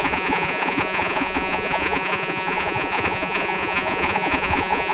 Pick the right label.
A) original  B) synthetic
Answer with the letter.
B